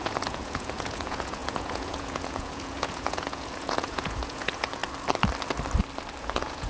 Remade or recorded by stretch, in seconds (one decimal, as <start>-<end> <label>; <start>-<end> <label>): 0.0-4.8 remade; 4.8-6.2 recorded; 6.2-6.7 remade